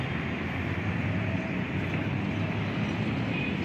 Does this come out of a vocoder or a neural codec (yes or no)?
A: no